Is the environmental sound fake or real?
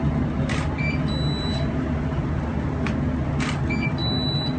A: real